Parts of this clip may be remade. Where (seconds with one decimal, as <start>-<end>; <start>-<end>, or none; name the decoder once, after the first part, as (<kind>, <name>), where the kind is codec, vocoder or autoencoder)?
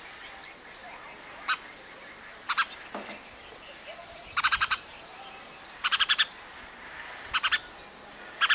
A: 4.0-6.2 (vocoder, BigVGAN v2)